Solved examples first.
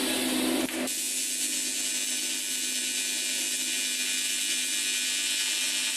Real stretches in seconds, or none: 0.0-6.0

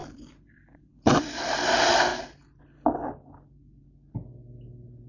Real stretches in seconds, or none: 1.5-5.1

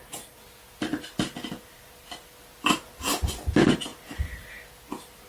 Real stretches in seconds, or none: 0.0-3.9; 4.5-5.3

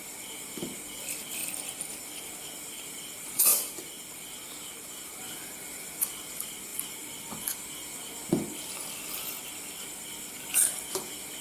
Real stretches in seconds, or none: none

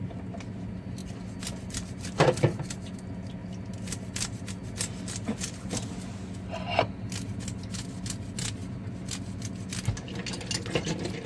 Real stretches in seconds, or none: 0.0-11.3

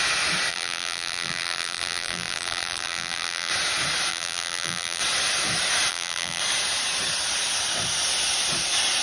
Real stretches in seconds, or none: 0.0-0.5; 3.5-4.1; 5.0-5.9; 6.4-9.0

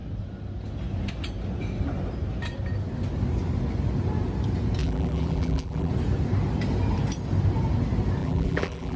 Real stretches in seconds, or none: 0.0-4.8; 5.9-8.2